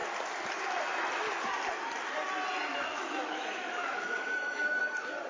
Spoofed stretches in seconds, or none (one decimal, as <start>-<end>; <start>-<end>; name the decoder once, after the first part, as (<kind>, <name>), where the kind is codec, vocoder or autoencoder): 2.7-4.8 (autoencoder, DAC-VAE)